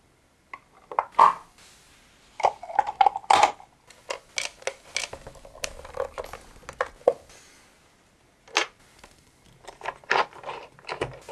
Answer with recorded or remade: recorded